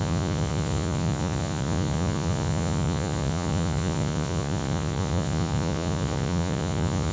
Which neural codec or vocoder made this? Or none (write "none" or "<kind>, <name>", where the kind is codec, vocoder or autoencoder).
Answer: vocoder, Vocos